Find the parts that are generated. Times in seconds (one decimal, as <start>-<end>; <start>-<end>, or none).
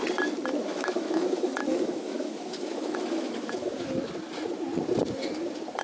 0.7-3.9